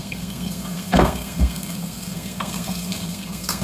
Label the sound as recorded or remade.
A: remade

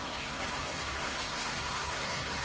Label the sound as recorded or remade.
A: remade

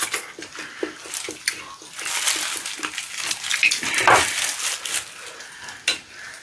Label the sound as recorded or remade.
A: recorded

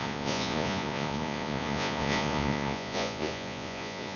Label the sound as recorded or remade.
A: remade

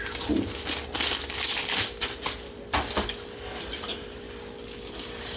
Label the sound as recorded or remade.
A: recorded